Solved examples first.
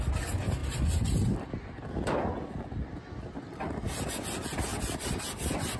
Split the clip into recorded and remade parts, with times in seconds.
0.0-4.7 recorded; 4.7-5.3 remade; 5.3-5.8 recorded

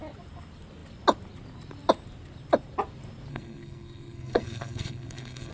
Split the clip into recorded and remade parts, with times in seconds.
0.0-3.3 recorded; 3.3-5.5 remade

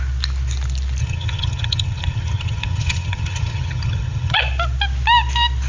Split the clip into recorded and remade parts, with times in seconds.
0.0-1.0 recorded; 1.0-4.4 remade; 4.4-5.7 recorded